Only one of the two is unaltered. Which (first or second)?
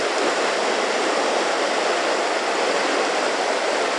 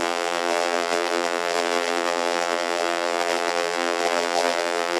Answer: first